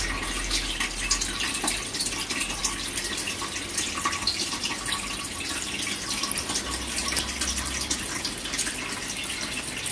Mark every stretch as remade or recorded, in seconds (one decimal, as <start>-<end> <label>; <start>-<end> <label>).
0.0-9.9 recorded